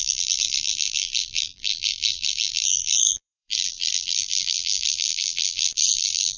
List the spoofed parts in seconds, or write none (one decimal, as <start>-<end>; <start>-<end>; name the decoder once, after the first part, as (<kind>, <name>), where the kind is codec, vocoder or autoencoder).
0.0-6.4 (vocoder, BigVGAN v2)